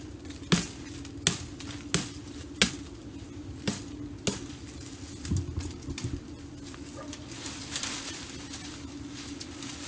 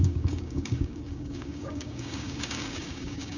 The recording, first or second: first